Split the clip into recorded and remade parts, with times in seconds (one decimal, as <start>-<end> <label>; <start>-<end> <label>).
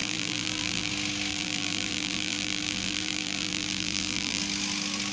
0.0-0.9 remade; 0.9-1.3 recorded; 1.3-4.4 remade; 4.4-5.1 recorded